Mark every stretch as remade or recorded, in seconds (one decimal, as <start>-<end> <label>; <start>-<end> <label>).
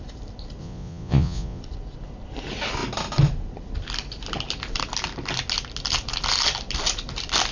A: 0.0-0.6 recorded; 0.6-1.6 remade; 1.6-7.5 recorded